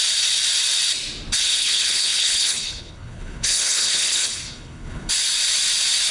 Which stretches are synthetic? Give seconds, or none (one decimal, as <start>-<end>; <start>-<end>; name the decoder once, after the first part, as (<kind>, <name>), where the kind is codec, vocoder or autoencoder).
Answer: 1.4-5.1 (codec, HILCodec)